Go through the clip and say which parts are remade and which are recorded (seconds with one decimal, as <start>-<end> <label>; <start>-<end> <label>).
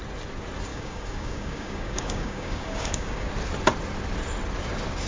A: 0.0-0.7 recorded; 0.7-3.3 remade; 3.3-5.1 recorded